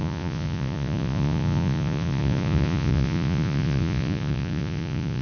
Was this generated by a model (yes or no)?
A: yes